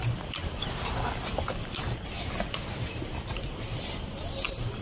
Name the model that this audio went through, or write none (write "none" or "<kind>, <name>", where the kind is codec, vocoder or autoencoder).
none